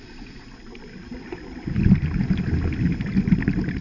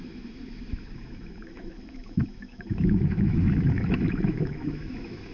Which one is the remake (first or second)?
second